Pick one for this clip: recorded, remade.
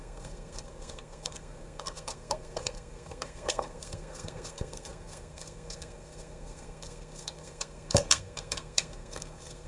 remade